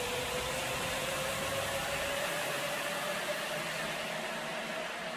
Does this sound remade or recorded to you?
recorded